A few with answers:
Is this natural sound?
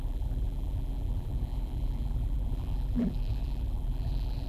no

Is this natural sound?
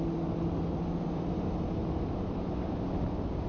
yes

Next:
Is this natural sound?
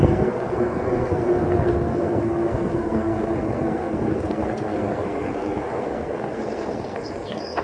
no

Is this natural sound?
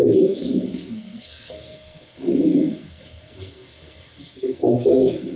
no